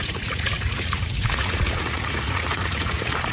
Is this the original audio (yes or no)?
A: no